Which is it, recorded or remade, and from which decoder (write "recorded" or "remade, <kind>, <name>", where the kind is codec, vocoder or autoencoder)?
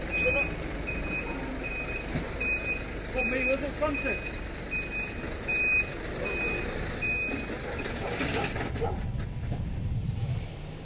recorded